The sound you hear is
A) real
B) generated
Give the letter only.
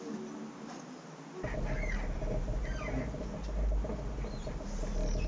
A